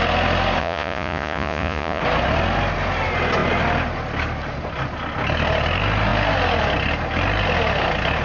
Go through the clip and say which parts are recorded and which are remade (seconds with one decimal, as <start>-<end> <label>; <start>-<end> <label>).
0.0-0.6 recorded; 0.6-2.0 remade; 2.0-8.2 recorded